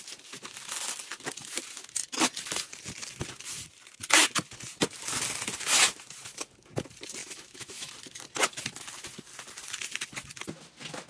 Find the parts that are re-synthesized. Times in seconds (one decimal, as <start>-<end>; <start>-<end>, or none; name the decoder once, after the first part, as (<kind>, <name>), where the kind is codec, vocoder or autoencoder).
7.2-7.9 (autoencoder, DAC-VAE)